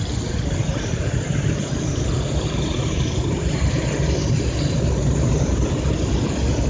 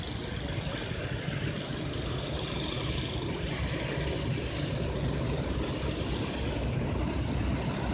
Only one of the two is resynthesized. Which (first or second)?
first